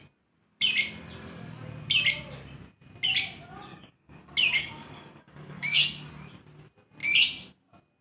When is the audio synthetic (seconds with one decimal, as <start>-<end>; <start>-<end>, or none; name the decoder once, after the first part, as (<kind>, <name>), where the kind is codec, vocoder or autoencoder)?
3.7-6.1 (codec, DAC)